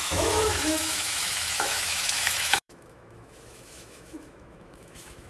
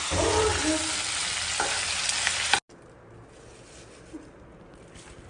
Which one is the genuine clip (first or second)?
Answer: second